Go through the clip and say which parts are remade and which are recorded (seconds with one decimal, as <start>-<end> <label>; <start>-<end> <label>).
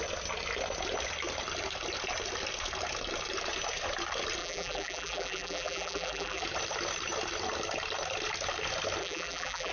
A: 0.0-4.4 recorded; 4.4-6.4 remade; 6.4-9.0 recorded; 9.0-9.7 remade